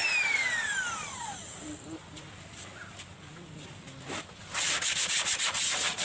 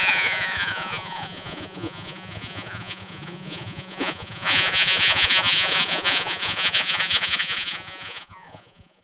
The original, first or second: first